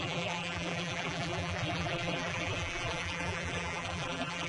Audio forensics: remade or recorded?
remade